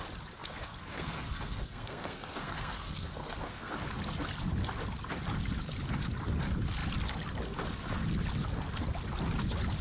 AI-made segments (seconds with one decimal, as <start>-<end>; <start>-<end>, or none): 0.4-3.7